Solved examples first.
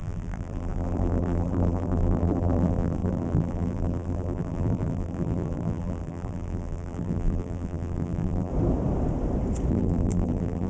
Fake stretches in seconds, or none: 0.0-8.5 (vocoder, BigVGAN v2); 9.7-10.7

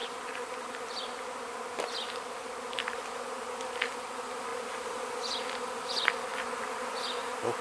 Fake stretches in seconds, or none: 0.0-4.5 (vocoder, BigVGAN v2)

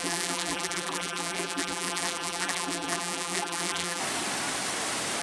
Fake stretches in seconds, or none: 0.0-4.0 (vocoder, BigVGAN v2)

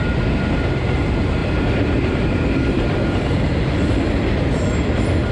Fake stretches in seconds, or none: 1.4-4.6 (vocoder, BigVGAN v2)

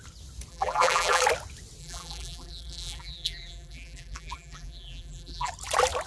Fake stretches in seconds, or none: 0.5-1.2 (vocoder, BigVGAN v2); 1.8-5.5

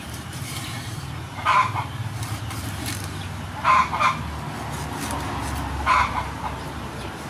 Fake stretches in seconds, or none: 0.0-3.8 (vocoder, BigVGAN v2); 5.9-7.3